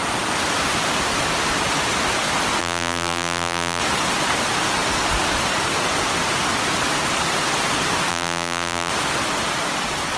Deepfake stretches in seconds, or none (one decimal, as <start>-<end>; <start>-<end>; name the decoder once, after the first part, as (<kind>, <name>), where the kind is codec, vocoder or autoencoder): 2.6-3.8 (vocoder, BigVGAN v2); 8.1-8.9